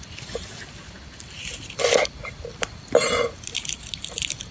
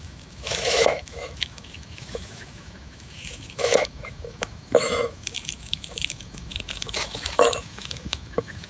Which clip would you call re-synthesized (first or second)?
second